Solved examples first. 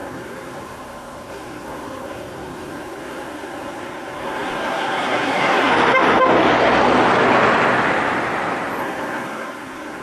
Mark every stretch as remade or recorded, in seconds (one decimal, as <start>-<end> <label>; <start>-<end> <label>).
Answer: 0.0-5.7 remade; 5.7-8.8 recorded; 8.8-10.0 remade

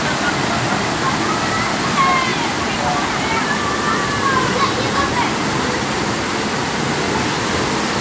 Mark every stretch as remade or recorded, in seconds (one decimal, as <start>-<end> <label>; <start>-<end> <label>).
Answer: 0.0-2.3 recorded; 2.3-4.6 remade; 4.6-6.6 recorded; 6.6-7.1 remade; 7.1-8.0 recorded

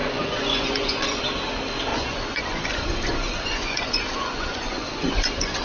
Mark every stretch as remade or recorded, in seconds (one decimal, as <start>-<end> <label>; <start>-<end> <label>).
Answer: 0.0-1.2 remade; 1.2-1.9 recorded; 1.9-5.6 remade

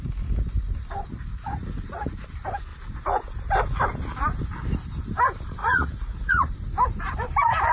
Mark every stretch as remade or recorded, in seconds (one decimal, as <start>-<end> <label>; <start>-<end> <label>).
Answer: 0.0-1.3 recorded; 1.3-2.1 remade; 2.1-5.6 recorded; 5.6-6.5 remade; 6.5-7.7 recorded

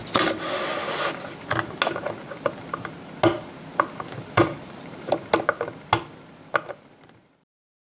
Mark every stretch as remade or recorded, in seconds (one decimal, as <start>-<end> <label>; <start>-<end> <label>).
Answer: 0.0-3.7 recorded; 3.7-5.3 remade; 5.3-7.8 recorded

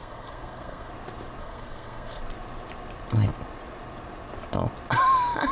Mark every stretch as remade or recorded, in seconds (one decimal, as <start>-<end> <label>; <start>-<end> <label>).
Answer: 0.0-0.9 remade; 0.9-1.4 recorded; 1.4-2.2 remade; 2.2-5.5 recorded

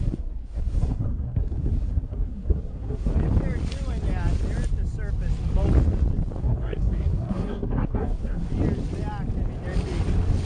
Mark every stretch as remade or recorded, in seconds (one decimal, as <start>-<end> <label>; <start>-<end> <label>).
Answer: 0.0-3.1 remade; 3.1-6.4 recorded; 6.4-8.5 remade; 8.5-10.5 recorded

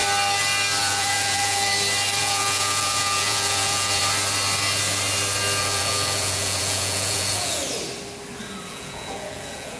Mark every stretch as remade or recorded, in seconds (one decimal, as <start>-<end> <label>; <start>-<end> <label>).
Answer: 0.0-0.8 recorded; 0.8-1.7 remade; 1.7-2.2 recorded; 2.2-4.0 remade; 4.0-5.6 recorded; 5.6-7.6 remade; 7.6-8.7 recorded; 8.7-9.8 remade